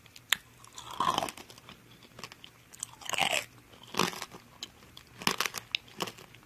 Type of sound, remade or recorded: recorded